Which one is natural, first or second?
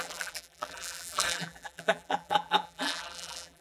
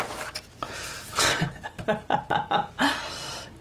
second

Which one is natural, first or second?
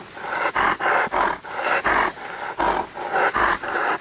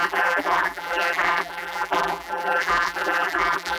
first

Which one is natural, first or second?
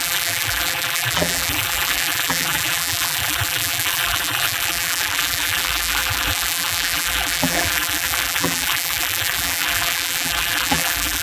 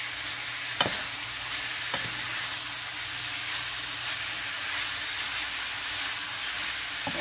second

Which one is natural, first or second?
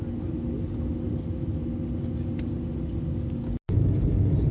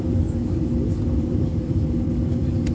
first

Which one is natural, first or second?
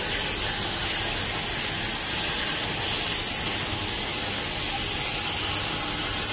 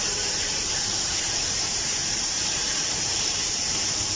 first